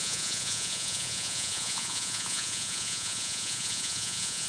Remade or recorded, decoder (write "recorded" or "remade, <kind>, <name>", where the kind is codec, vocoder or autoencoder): remade, vocoder, Vocos